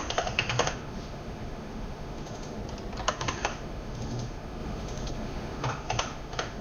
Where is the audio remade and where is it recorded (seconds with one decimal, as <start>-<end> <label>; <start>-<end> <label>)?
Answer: 0.0-2.6 remade; 2.6-3.1 recorded; 3.1-6.6 remade